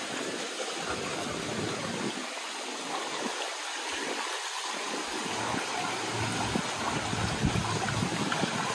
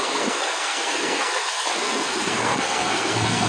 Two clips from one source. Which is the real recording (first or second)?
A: first